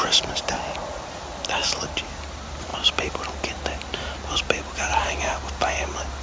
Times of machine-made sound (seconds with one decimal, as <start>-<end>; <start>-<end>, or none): none